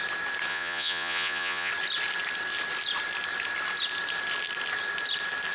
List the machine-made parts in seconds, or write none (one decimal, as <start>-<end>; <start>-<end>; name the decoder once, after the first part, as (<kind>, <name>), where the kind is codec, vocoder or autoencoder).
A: 0.5-1.7 (vocoder, Vocos)